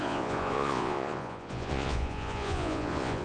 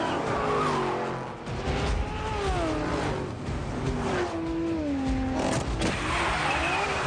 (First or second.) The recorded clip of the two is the second